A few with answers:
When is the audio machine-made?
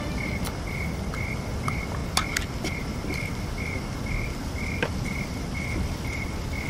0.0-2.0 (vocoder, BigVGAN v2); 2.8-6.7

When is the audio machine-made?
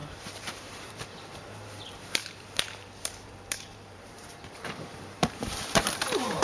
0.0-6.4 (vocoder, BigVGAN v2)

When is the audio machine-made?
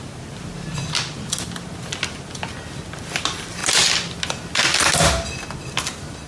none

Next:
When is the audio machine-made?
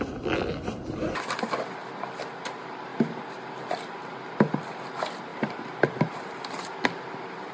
5.3-6.5 (vocoder, BigVGAN v2)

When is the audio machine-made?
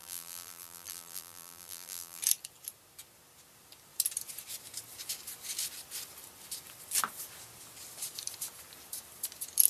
0.0-2.2 (vocoder, BigVGAN v2)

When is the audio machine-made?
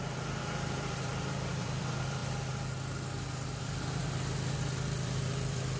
0.0-2.2 (vocoder, BigVGAN v2); 3.6-4.0; 4.5-5.8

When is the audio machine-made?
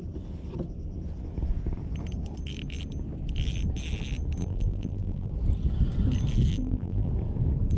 4.4-5.3 (vocoder, BigVGAN v2); 6.5-7.1